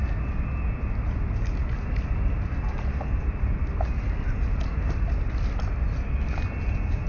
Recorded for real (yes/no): yes